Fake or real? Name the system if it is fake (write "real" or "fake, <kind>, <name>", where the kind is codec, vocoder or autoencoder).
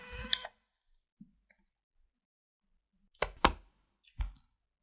real